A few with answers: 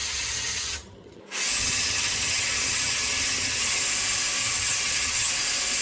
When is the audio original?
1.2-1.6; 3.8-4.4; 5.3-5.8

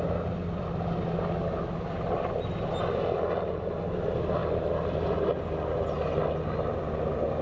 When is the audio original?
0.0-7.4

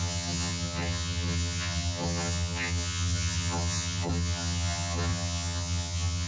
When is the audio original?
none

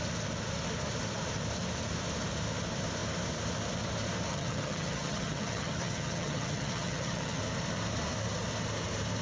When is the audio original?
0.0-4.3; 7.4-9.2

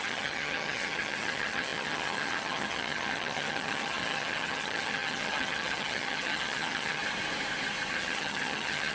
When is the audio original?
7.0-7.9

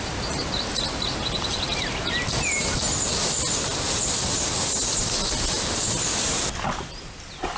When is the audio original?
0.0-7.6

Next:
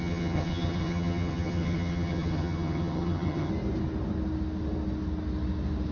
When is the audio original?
3.5-5.9

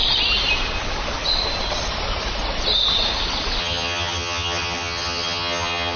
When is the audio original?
0.0-3.6